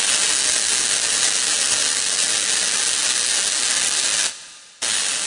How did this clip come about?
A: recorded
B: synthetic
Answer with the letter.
A